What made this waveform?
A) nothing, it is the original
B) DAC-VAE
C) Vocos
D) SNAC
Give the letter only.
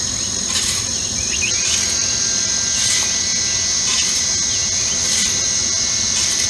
A